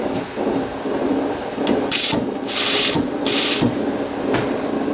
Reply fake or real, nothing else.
real